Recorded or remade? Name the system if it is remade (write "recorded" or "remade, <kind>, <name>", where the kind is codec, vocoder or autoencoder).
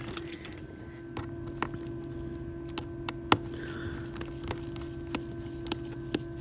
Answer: recorded